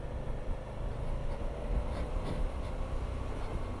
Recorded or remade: recorded